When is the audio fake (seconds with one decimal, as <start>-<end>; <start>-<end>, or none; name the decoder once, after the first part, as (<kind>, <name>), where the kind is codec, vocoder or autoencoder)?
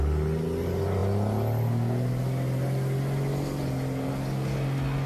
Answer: none